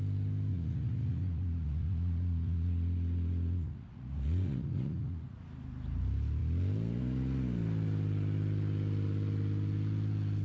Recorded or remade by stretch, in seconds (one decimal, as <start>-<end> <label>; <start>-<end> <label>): 0.0-0.5 recorded; 0.5-5.4 remade; 5.4-10.4 recorded